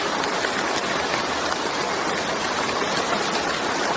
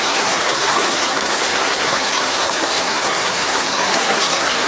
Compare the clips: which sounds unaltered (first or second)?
first